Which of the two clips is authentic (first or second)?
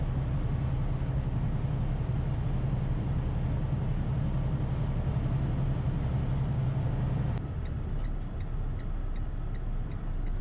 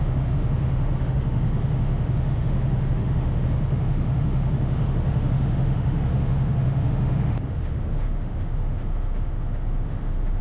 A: first